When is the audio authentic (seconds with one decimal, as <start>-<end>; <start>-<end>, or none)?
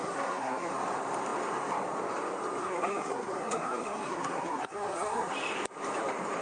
0.7-2.6; 5.3-6.4